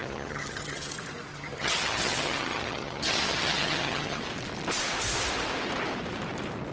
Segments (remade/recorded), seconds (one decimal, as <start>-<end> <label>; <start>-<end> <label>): 0.0-0.9 remade; 0.9-1.3 recorded; 1.3-4.2 remade; 4.2-6.7 recorded